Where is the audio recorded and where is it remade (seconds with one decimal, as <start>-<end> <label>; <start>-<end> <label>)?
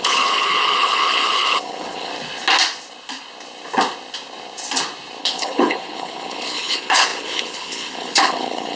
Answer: 0.0-2.1 remade; 2.1-5.2 recorded; 5.2-8.8 remade